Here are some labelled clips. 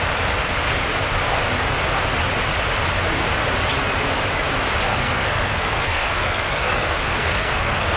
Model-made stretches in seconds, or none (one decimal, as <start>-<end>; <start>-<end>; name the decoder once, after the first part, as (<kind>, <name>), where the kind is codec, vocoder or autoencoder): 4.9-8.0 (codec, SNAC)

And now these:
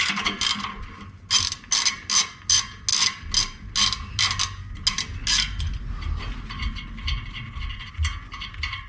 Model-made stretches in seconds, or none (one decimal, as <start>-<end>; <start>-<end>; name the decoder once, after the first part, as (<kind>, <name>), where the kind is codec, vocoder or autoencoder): none

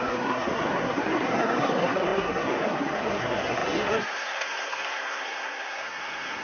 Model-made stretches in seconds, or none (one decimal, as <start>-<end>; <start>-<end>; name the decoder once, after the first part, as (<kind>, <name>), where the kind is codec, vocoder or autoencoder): 0.0-6.4 (codec, SNAC)

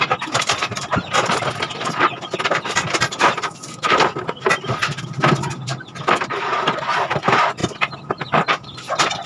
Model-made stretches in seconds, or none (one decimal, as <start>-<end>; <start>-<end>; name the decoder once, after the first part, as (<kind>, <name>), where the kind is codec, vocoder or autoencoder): none

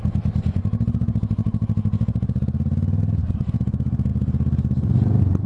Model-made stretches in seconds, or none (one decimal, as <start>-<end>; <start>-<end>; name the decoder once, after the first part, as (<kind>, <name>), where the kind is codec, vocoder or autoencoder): none